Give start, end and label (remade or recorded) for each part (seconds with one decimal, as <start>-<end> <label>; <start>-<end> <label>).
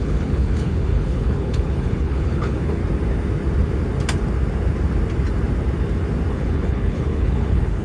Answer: 0.0-2.8 remade; 2.8-6.3 recorded; 6.3-7.8 remade